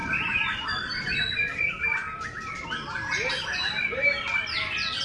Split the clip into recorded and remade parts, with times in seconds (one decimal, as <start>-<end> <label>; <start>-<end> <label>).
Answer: 0.0-1.6 remade; 1.6-2.0 recorded; 2.0-2.7 remade; 2.7-3.8 recorded; 3.8-5.0 remade